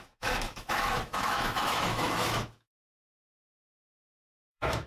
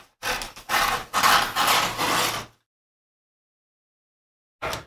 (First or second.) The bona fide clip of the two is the second